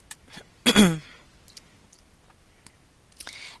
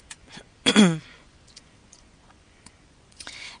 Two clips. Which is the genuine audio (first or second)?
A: first